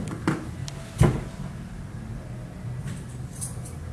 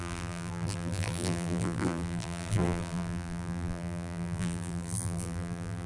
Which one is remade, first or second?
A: second